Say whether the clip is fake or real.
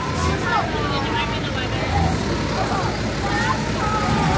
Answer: real